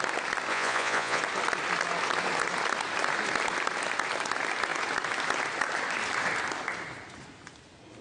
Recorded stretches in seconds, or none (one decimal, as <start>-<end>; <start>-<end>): 0.0-0.5; 1.2-8.0